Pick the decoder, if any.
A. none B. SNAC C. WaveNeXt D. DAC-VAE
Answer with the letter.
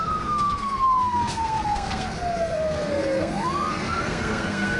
B